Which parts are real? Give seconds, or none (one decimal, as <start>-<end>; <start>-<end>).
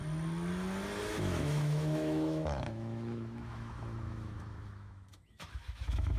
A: 0.0-1.0